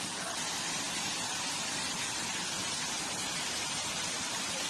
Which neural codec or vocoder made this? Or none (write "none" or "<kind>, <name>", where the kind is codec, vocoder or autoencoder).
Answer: none